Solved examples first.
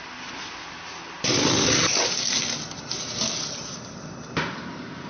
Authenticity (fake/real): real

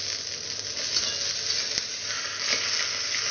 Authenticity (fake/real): real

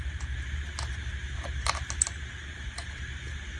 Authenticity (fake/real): real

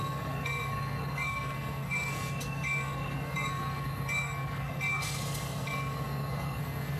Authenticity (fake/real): fake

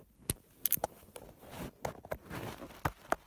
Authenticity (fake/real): real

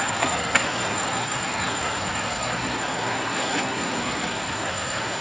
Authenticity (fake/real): fake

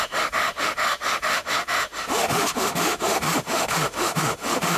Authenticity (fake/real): fake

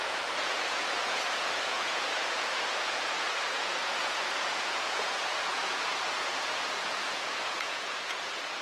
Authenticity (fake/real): fake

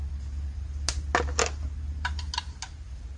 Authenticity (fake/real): real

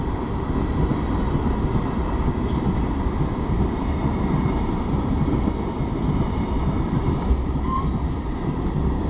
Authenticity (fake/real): real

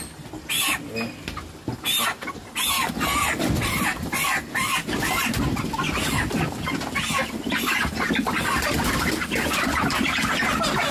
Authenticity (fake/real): real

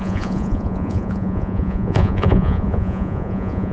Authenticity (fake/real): fake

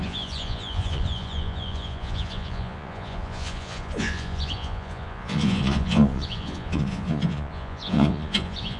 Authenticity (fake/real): fake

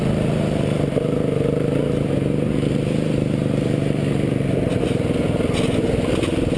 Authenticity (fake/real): real